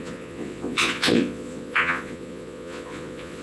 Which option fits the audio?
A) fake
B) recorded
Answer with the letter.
A